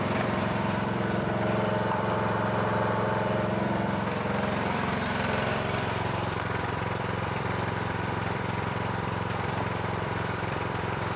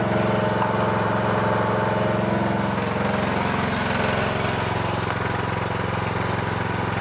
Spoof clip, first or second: first